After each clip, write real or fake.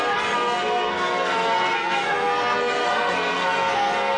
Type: fake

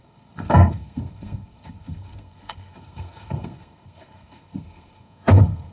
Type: fake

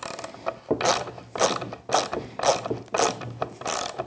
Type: real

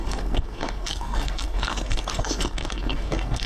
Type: fake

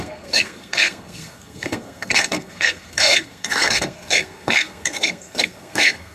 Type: fake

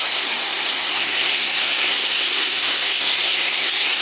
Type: fake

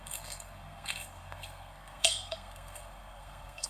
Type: fake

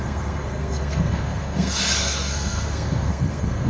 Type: fake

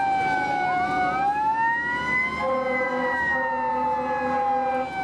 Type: real